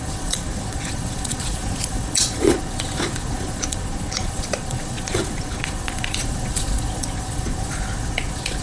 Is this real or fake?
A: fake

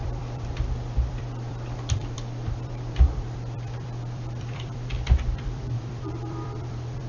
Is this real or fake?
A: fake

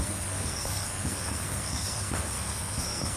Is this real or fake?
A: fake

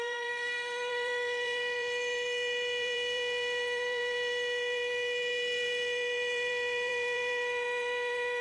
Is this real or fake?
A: fake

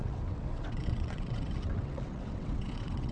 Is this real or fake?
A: fake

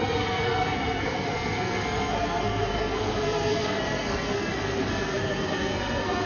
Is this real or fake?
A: fake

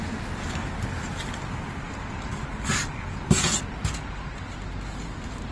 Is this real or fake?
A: real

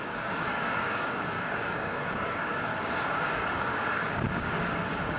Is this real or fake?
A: fake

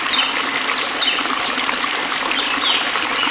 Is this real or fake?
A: real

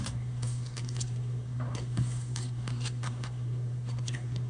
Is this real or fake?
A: fake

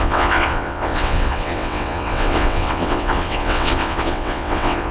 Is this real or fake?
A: fake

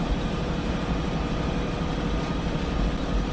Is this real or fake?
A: fake